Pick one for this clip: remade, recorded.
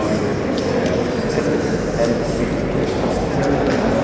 recorded